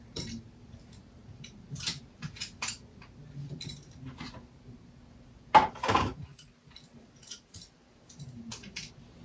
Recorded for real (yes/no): yes